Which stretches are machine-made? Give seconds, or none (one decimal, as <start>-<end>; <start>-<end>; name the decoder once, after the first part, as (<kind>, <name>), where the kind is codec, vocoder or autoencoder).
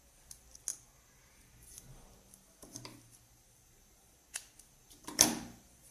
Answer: 0.7-4.2 (vocoder, BigVGAN v2); 4.8-5.9